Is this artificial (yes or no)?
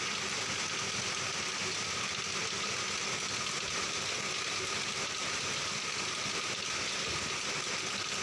no